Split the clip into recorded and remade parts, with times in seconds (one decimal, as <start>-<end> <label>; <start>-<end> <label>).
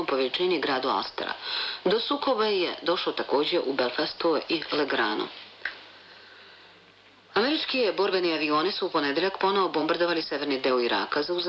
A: 0.0-11.5 recorded